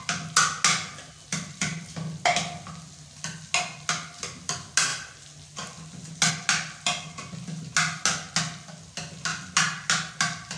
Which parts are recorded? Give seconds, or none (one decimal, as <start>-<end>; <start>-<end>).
0.0-1.3; 1.8-10.6